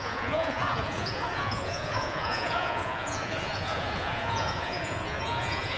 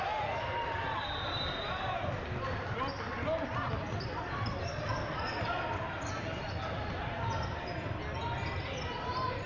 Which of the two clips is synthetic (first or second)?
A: first